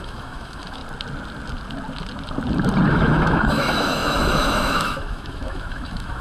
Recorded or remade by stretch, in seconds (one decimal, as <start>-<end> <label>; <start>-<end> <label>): 0.0-0.8 remade; 0.8-2.9 recorded; 2.9-6.2 remade